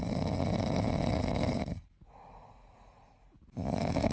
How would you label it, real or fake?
real